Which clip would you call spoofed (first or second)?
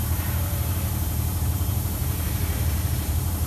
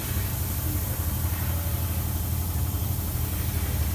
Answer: first